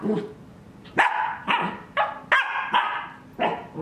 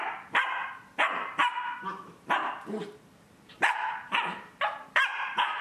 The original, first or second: first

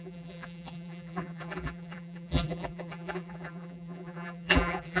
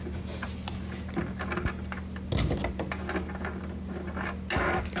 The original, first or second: second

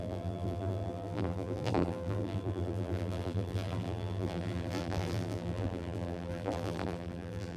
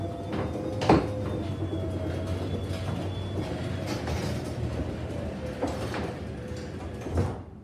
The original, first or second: second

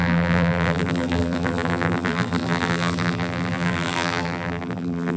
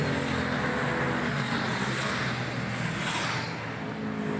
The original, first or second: second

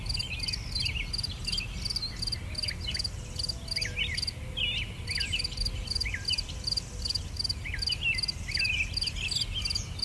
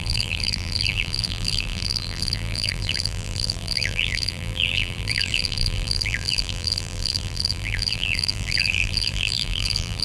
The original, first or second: first